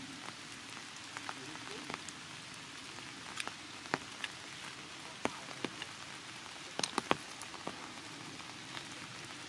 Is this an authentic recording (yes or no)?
yes